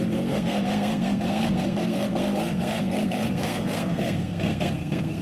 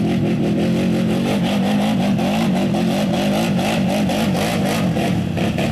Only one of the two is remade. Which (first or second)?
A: first